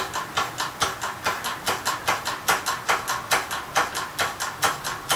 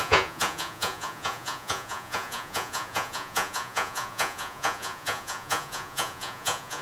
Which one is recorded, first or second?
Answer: first